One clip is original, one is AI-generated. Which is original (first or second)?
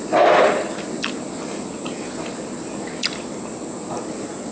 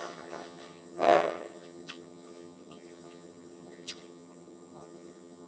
first